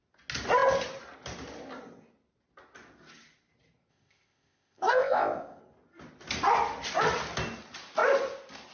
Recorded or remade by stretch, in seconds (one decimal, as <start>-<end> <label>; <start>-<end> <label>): 0.0-3.9 recorded; 3.9-5.6 remade; 5.6-8.7 recorded